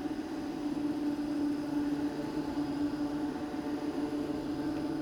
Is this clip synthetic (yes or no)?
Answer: no